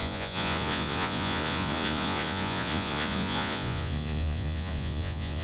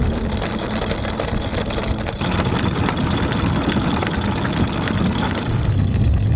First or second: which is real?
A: second